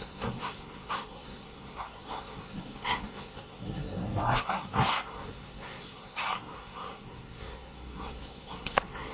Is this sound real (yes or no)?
no